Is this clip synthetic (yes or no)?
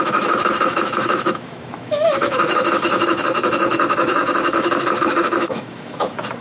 yes